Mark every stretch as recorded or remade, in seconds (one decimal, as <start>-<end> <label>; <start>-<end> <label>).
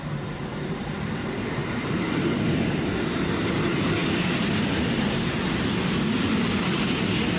0.0-1.6 remade; 1.6-3.1 recorded; 3.1-7.4 remade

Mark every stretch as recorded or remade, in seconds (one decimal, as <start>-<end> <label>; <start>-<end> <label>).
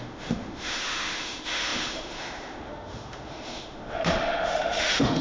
0.0-5.2 remade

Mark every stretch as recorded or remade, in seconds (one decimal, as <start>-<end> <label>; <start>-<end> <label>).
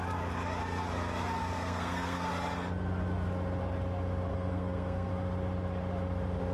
0.0-1.4 recorded; 1.4-2.3 remade; 2.3-4.3 recorded; 4.3-5.1 remade; 5.1-6.5 recorded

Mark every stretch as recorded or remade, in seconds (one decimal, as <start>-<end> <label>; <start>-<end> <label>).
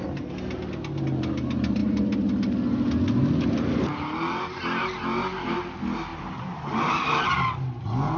0.0-6.1 recorded; 6.1-7.3 remade; 7.3-8.2 recorded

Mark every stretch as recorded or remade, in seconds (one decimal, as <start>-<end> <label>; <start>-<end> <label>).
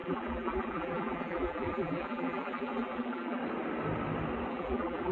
0.0-3.4 remade; 3.4-4.5 recorded; 4.5-5.1 remade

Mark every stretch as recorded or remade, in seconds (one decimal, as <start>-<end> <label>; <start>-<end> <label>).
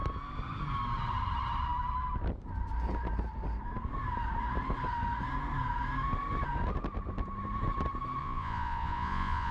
0.0-8.2 recorded; 8.2-9.5 remade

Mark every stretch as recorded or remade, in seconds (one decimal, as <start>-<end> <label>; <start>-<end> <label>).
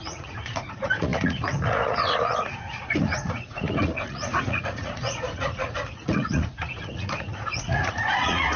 0.0-8.6 remade